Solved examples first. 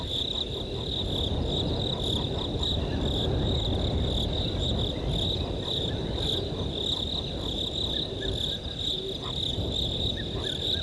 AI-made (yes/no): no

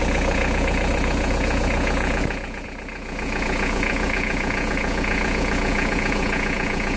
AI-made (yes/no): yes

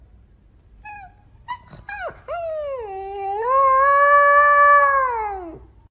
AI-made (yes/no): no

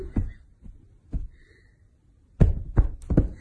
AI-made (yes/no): no